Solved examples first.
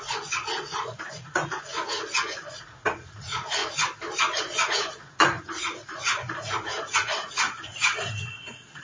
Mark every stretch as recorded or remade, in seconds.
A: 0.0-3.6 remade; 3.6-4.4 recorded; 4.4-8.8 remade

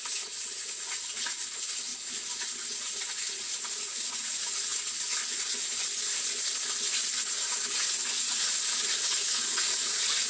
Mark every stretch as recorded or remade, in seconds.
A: 0.0-1.9 remade; 1.9-2.8 recorded; 2.8-4.7 remade; 4.7-8.1 recorded; 8.1-10.3 remade

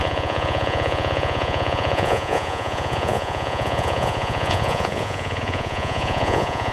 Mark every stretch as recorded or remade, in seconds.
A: 0.0-6.7 remade

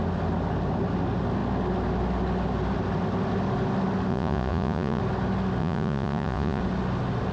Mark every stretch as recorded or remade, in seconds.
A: 0.0-4.1 recorded; 4.1-5.0 remade; 5.0-5.6 recorded; 5.6-6.6 remade; 6.6-7.3 recorded

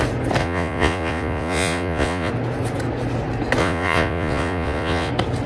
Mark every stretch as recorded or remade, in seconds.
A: 0.0-0.4 recorded; 0.4-2.3 remade; 2.3-3.6 recorded; 3.6-5.1 remade; 5.1-5.5 recorded

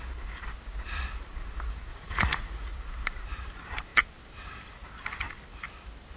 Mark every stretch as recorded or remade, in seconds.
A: 0.0-1.9 recorded; 1.9-2.7 remade; 2.7-6.2 recorded